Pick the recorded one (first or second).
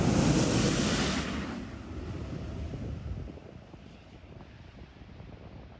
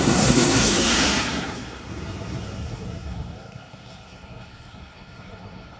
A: first